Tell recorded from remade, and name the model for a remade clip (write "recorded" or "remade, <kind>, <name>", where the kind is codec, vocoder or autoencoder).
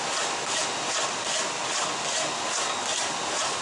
recorded